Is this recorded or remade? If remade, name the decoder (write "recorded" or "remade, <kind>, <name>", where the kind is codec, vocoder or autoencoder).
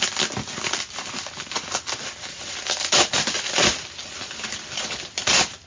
recorded